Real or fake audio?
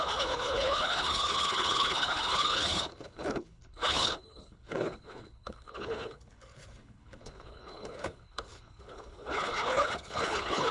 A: fake